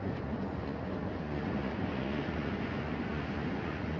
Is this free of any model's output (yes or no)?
no